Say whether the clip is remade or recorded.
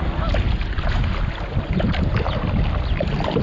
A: recorded